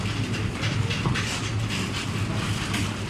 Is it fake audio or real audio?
real